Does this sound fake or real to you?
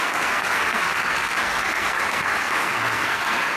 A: fake